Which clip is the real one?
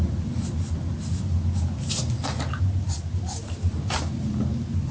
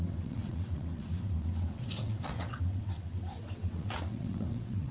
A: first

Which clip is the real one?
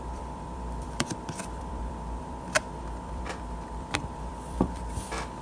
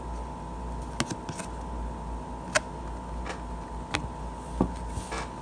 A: second